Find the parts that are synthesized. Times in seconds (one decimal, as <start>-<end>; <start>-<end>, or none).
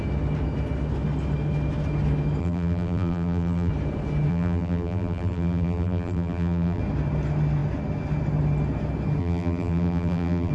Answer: 2.4-3.7; 4.3-6.8; 9.2-10.5